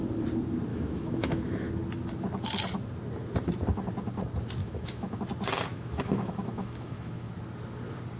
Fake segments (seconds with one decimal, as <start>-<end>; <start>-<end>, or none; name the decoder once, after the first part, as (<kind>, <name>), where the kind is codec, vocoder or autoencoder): 0.7-1.7 (autoencoder, DAC-VAE); 4.6-5.2; 5.7-7.3